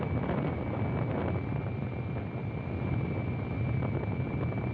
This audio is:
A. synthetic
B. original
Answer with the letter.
B